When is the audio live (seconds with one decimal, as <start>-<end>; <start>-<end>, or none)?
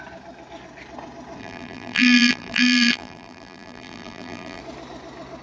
0.0-1.4; 4.6-5.4